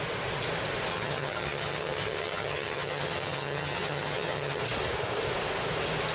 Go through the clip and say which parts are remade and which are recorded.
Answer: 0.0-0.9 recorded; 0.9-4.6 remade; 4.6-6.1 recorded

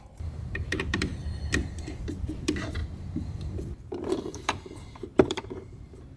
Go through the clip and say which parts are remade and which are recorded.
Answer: 0.0-1.1 remade; 1.1-2.1 recorded; 2.1-2.8 remade; 2.8-3.8 recorded; 3.8-6.2 remade

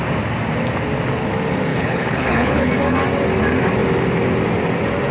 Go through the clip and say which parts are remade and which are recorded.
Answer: 0.0-1.7 recorded; 1.7-2.7 remade; 2.7-5.1 recorded

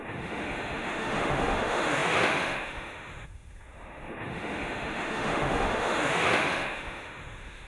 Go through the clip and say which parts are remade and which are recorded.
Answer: 0.0-7.7 remade

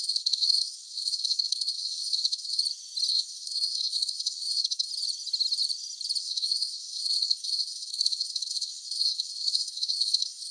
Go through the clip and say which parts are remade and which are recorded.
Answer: 0.0-2.6 remade; 2.6-3.1 recorded; 3.1-4.9 remade; 4.9-6.2 recorded; 6.2-10.5 remade

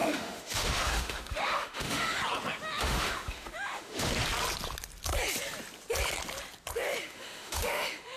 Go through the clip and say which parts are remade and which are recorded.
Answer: 0.0-2.2 remade; 2.2-2.8 recorded; 2.8-4.1 remade; 4.1-7.0 recorded; 7.0-8.2 remade